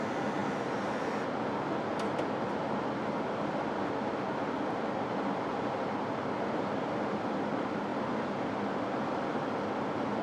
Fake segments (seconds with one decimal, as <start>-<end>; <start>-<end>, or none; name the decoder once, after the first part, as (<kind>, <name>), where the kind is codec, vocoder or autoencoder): none